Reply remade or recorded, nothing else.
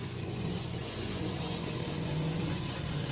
remade